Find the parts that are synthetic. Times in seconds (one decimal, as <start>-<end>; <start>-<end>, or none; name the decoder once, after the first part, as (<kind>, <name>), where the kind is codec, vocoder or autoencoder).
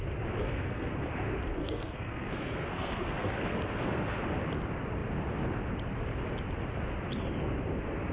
0.4-0.9 (codec, SNAC); 1.6-4.2